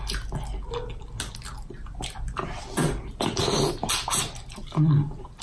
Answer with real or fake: real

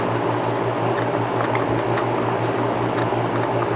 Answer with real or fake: real